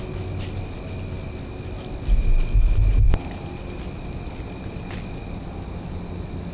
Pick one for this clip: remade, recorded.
recorded